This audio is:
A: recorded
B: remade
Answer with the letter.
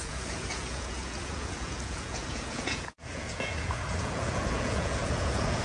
B